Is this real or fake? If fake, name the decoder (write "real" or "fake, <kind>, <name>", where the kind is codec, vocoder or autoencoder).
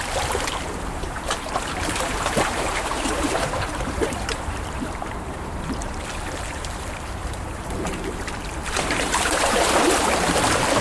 fake, vocoder, BigVGAN v2